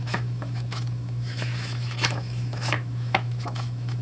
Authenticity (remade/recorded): remade